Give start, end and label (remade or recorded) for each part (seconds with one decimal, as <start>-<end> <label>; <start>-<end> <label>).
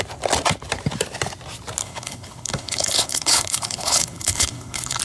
0.0-1.8 recorded; 1.8-5.0 remade